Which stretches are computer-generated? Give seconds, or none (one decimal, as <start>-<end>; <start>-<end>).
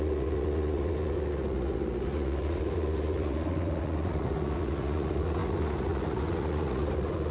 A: 0.0-7.3